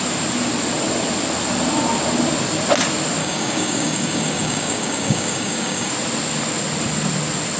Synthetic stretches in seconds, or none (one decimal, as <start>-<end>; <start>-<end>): 3.2-5.9